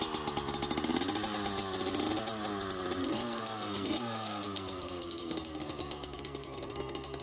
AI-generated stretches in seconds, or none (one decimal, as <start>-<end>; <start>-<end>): 3.0-7.2